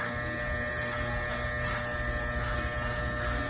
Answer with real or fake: real